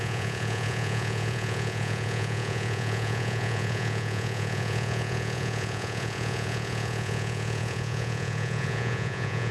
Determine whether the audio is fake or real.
fake